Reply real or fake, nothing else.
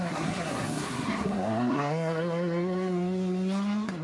fake